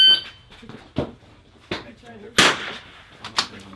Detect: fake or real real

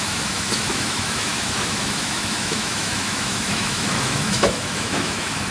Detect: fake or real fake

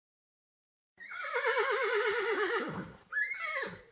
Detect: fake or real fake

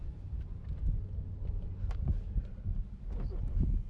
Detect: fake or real real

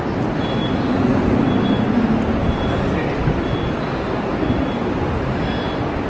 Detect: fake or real real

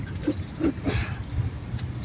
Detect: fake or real fake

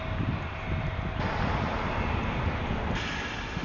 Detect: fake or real real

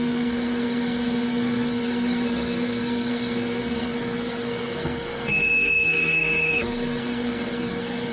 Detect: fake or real fake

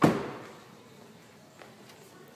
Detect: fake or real real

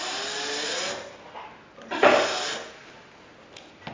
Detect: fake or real real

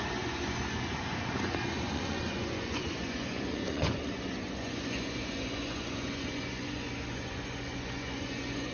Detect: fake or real fake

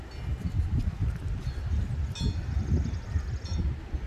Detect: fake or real real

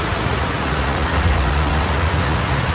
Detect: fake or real fake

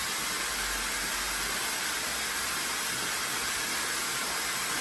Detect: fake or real real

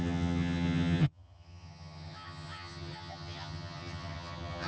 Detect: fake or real fake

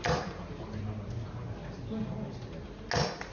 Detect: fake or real real